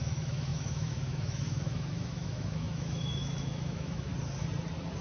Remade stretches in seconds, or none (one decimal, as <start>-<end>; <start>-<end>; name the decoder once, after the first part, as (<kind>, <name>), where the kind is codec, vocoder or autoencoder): 0.0-4.1 (autoencoder, DAC-VAE)